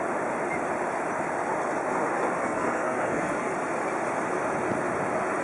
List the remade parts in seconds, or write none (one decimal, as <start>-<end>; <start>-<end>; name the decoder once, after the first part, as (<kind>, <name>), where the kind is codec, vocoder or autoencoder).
2.4-3.5 (codec, SNAC)